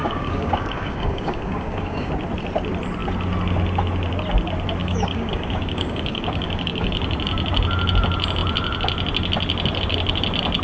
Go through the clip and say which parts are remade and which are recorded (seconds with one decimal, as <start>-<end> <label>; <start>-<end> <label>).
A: 0.0-2.1 remade; 2.1-4.8 recorded; 4.8-6.9 remade; 6.9-10.6 recorded